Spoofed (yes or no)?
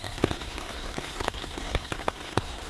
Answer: yes